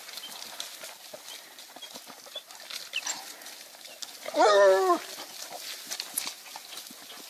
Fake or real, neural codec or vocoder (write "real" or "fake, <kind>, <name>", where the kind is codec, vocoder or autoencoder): real